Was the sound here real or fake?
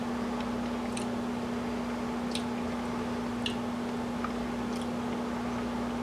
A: real